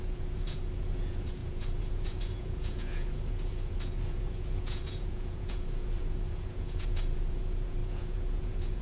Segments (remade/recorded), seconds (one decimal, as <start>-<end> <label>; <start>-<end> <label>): 0.0-8.8 remade